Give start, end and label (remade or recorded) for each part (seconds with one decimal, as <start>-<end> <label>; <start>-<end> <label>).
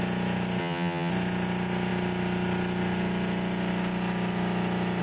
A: 0.0-0.6 recorded; 0.6-1.1 remade; 1.1-5.0 recorded